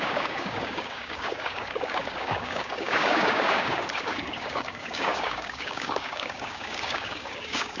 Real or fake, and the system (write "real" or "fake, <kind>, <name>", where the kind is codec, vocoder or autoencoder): fake, codec, DAC